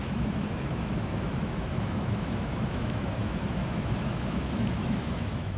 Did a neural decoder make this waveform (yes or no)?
yes